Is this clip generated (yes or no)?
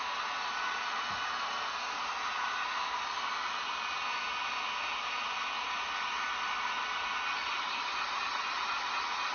no